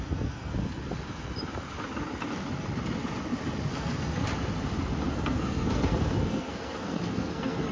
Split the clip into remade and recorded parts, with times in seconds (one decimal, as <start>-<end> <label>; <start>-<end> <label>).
0.0-0.5 remade; 0.5-3.7 recorded; 3.7-4.2 remade; 4.2-5.1 recorded; 5.1-7.7 remade